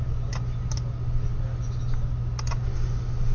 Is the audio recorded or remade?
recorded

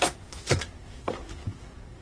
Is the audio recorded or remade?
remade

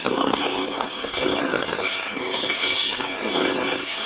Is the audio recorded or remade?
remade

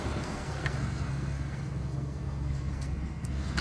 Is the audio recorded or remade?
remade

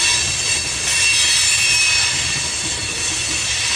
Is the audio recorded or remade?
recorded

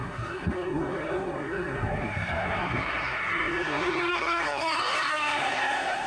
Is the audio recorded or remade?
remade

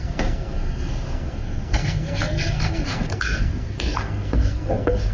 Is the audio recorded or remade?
remade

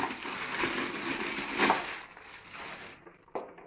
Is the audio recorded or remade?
recorded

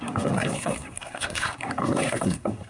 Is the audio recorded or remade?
remade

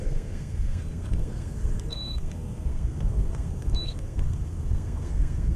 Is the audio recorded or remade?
remade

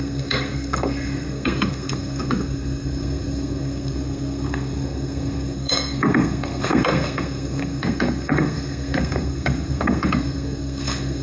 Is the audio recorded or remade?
remade